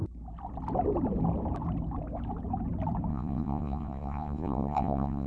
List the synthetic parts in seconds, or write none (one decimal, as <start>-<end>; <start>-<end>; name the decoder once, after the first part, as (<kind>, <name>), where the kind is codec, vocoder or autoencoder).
3.1-5.3 (vocoder, WaveNeXt)